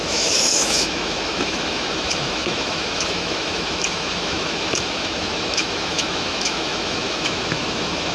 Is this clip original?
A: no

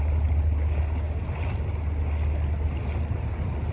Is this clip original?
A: yes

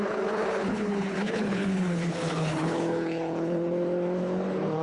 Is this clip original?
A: no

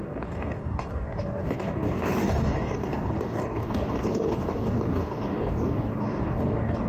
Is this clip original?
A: no